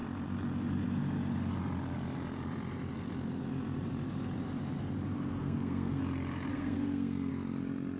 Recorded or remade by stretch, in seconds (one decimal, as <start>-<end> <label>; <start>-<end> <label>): 0.0-5.4 recorded; 5.4-6.0 remade; 6.0-6.5 recorded; 6.5-7.3 remade; 7.3-8.0 recorded